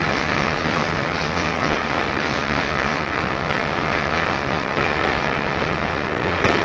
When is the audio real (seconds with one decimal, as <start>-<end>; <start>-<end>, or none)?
none